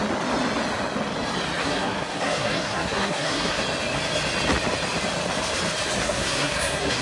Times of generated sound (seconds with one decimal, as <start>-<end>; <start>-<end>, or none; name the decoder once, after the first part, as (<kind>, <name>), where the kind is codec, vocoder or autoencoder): 1.6-3.6 (codec, SNAC); 6.0-7.0